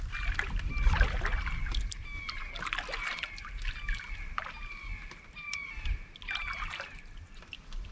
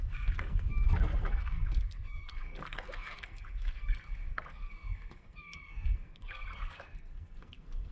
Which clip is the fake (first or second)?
second